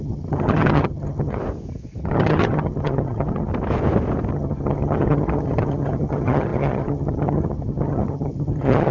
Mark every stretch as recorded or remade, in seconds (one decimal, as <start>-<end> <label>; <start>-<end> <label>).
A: 0.0-1.4 remade; 1.4-2.0 recorded; 2.0-3.5 remade; 3.5-4.3 recorded; 4.3-8.9 remade